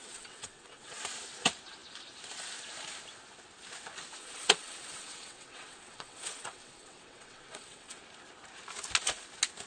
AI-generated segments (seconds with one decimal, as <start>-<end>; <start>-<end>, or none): 0.0-1.0; 4.2-8.0